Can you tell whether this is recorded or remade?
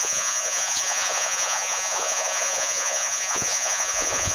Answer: remade